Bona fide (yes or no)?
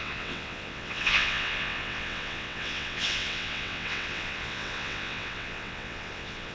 no